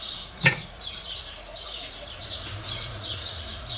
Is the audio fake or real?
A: fake